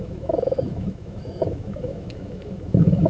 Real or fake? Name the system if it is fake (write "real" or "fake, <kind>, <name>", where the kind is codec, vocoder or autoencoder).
fake, autoencoder, DAC-VAE